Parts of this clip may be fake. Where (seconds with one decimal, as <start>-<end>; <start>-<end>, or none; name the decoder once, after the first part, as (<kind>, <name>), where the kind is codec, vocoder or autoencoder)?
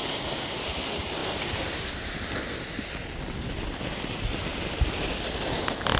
none